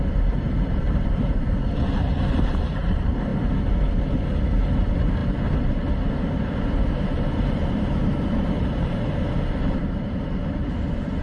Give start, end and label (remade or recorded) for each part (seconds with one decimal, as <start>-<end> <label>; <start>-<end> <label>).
0.0-3.3 remade; 3.3-4.4 recorded; 4.4-11.2 remade